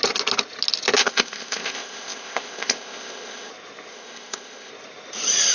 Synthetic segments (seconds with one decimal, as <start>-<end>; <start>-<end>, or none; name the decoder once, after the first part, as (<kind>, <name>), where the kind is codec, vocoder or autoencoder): 1.0-3.5 (codec, ZipCodec); 3.9-4.7